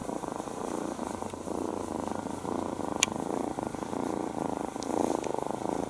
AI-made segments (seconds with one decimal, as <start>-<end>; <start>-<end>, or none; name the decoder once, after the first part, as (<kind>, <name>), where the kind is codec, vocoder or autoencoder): 0.0-1.7 (vocoder, BigVGAN v2)